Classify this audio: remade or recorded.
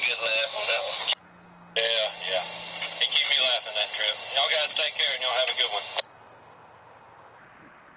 recorded